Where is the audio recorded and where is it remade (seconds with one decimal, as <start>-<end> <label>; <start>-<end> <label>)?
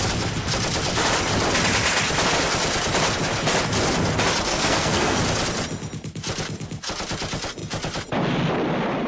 0.0-4.5 recorded; 4.5-5.2 remade; 5.2-9.1 recorded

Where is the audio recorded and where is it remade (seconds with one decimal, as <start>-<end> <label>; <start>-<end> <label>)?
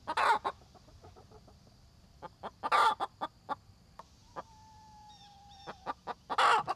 0.0-6.8 recorded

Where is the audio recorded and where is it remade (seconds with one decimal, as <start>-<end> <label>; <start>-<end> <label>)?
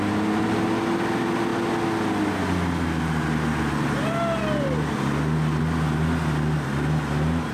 0.0-7.5 recorded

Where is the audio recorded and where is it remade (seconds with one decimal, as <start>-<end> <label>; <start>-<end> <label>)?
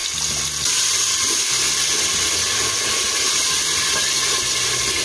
0.0-2.9 recorded; 2.9-5.0 remade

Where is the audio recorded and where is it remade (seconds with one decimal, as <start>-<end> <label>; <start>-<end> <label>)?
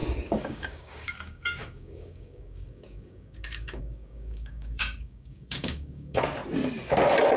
0.0-6.4 remade; 6.4-7.4 recorded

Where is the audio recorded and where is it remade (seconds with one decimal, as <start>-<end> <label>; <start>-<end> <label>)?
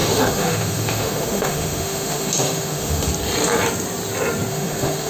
0.0-3.1 remade; 3.1-4.5 recorded; 4.5-5.1 remade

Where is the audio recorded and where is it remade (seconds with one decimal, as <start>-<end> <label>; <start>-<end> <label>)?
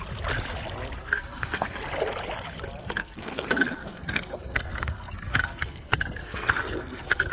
0.0-1.0 recorded; 1.0-1.8 remade; 1.8-2.8 recorded; 2.8-7.3 remade